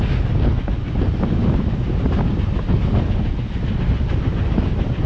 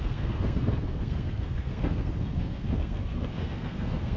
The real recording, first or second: first